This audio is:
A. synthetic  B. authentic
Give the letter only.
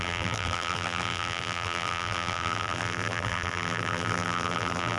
A